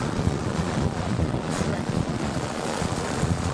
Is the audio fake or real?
fake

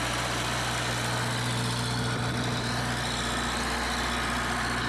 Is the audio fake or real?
real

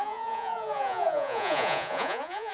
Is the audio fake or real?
fake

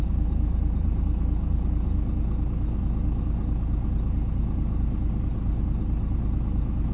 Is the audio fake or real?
real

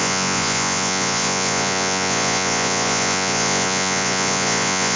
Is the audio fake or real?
fake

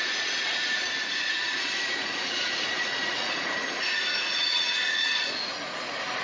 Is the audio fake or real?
fake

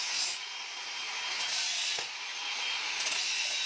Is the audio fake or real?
fake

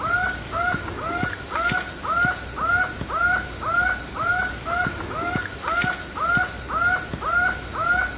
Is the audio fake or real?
real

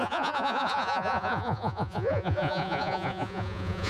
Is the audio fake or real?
fake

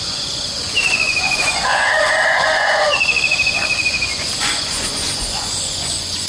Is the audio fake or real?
fake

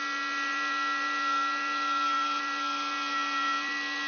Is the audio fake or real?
real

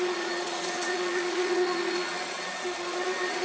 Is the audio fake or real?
fake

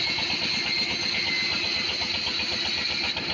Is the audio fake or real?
real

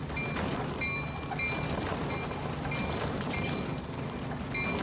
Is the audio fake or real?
real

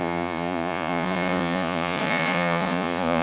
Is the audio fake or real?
fake